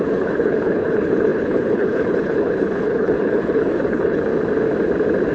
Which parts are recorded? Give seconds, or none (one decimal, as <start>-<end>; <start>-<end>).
4.3-5.3